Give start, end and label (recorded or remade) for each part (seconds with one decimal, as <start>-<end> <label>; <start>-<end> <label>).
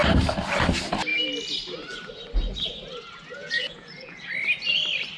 0.0-3.4 recorded; 3.4-4.3 remade; 4.3-5.2 recorded